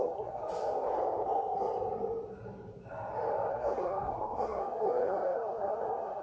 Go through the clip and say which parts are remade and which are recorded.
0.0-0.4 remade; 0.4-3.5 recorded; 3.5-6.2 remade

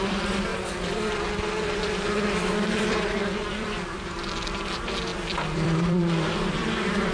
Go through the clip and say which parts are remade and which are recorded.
0.0-0.5 remade; 0.5-2.7 recorded; 2.7-7.1 remade

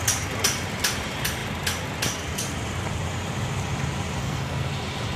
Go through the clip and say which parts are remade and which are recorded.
0.0-4.2 recorded; 4.2-4.7 remade; 4.7-5.2 recorded

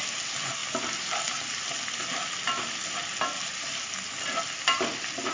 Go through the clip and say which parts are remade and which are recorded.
0.0-5.3 recorded

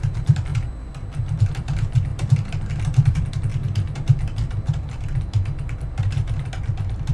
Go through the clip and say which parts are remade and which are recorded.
0.0-2.1 remade; 2.1-2.8 recorded; 2.8-3.5 remade; 3.5-7.1 recorded